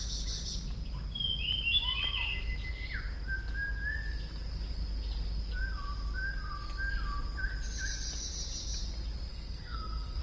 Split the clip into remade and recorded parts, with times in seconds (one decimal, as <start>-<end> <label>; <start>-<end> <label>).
0.0-9.3 recorded; 9.3-10.2 remade